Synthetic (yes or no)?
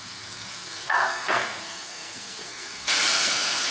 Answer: yes